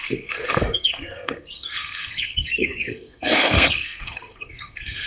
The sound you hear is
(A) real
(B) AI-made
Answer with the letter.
B